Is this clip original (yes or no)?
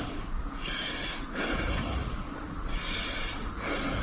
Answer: no